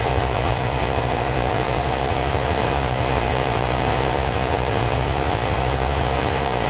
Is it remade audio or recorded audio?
remade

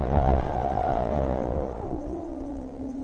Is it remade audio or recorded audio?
remade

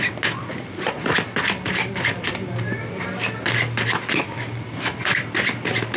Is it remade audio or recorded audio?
recorded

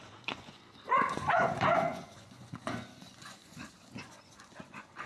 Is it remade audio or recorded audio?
remade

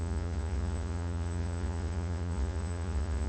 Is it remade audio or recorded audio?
remade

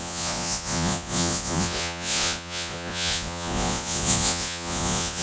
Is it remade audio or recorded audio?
remade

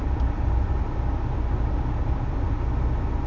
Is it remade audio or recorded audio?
recorded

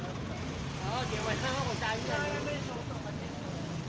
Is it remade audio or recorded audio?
recorded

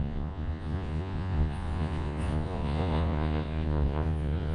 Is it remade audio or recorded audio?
remade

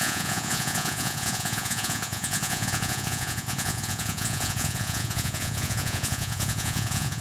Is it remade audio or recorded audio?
remade